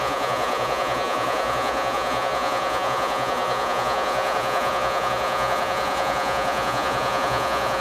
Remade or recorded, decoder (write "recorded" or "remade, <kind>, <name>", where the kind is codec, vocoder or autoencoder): remade, vocoder, Vocos